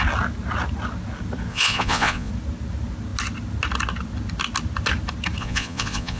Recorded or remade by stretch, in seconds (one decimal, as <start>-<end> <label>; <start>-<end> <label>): 0.0-1.5 recorded; 1.5-2.3 remade; 2.3-5.4 recorded; 5.4-6.2 remade